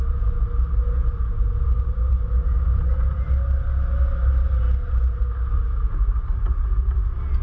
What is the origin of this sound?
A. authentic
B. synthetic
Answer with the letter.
A